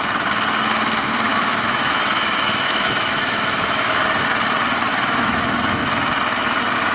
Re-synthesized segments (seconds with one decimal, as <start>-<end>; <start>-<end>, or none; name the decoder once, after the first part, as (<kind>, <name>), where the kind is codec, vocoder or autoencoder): 1.3-4.0 (autoencoder, DAC-VAE); 4.9-5.8